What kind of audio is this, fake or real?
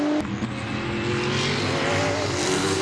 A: real